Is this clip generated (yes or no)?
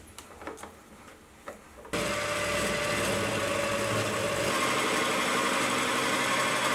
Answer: no